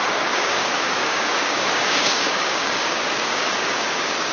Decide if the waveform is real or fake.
fake